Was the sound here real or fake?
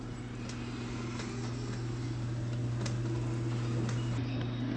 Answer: real